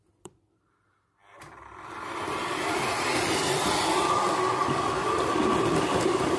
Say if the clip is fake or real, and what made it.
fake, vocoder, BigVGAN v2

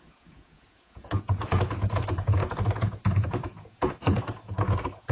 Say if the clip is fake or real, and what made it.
fake, vocoder, Vocos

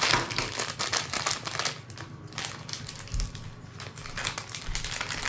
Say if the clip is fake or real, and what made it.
real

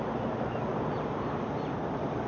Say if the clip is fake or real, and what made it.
fake, vocoder, BigVGAN v2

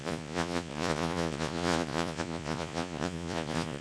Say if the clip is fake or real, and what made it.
fake, vocoder, Vocos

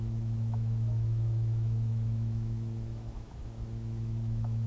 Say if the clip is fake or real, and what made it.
fake, autoencoder, DAC-VAE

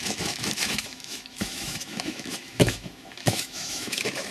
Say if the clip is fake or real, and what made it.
fake, autoencoder, DAC-VAE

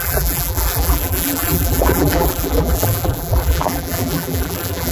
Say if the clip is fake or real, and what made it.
fake, vocoder, BigVGAN v2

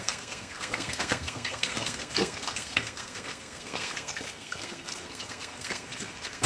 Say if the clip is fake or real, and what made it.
fake, codec, SNAC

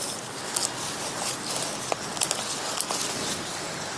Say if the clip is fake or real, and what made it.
real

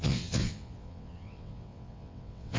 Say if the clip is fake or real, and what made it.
fake, vocoder, WaveNeXt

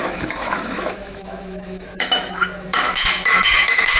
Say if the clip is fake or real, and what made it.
fake, autoencoder, DAC-VAE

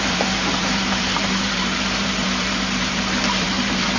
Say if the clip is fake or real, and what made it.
fake, vocoder, BigVGAN v2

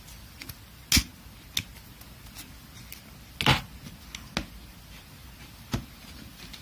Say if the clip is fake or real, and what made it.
real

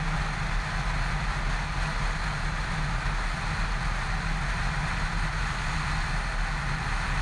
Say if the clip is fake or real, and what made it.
real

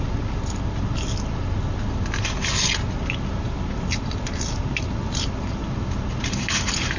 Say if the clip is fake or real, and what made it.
real